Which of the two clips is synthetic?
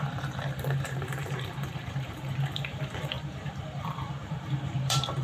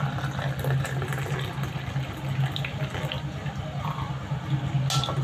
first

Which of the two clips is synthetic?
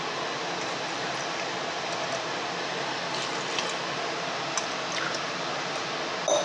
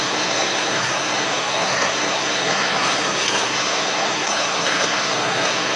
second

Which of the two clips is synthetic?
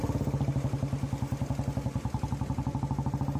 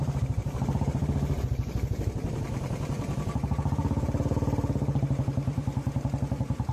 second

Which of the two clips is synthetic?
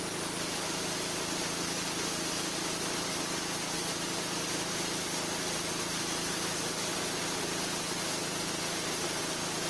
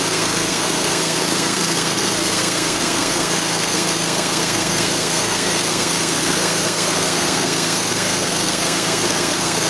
second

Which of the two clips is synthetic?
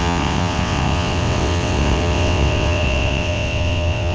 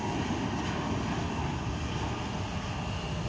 first